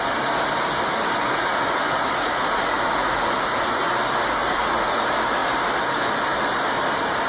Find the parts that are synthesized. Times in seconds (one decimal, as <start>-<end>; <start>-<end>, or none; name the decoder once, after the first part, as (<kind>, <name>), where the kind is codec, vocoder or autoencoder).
1.2-4.0 (vocoder, Vocos); 4.4-5.0